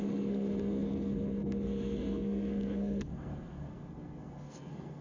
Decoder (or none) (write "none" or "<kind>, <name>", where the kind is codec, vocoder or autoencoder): codec, SNAC